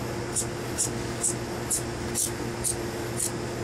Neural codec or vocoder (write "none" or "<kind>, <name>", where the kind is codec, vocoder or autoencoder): none